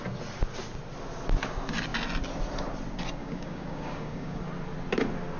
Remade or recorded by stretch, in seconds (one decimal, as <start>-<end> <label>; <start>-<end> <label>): 0.0-3.2 recorded; 3.2-4.4 remade; 4.4-5.4 recorded